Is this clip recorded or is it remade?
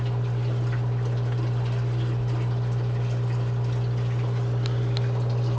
recorded